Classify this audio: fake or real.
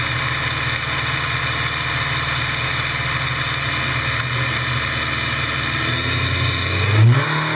real